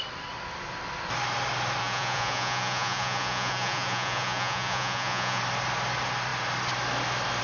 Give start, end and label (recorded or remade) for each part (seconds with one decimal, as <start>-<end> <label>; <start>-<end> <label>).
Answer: 0.0-1.8 recorded; 1.8-5.4 remade; 5.4-7.4 recorded